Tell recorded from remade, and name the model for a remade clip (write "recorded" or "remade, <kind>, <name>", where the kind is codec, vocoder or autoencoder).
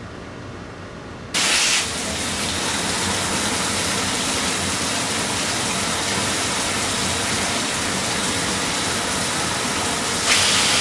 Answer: recorded